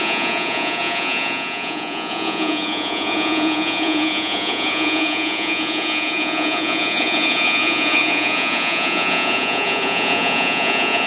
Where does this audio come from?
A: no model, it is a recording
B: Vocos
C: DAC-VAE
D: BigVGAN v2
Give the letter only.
B